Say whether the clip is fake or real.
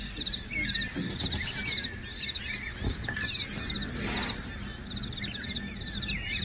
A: real